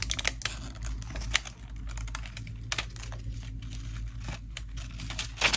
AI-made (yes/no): no